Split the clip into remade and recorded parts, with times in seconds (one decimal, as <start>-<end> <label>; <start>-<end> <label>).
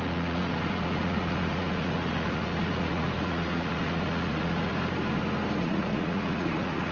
0.0-4.7 remade; 4.7-5.6 recorded; 5.6-6.9 remade